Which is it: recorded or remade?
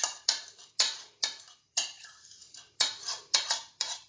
remade